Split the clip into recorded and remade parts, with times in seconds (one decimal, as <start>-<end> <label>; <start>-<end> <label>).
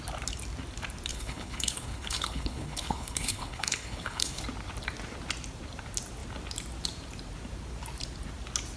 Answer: 0.0-1.1 recorded; 1.1-4.4 remade; 4.4-8.8 recorded